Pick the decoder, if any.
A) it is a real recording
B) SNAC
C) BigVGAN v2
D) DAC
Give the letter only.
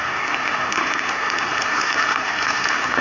B